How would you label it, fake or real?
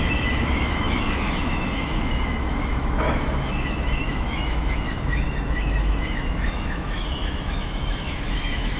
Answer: fake